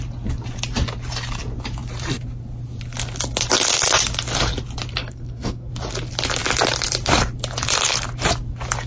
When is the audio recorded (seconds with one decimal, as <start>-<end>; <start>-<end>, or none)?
0.0-5.0; 5.7-8.9